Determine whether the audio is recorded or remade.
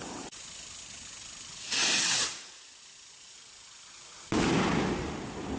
recorded